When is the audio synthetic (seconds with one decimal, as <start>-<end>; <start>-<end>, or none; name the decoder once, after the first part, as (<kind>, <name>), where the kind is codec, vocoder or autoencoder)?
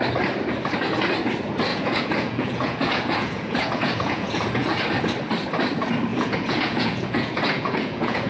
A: 1.7-4.8 (vocoder, Vocos); 6.1-8.3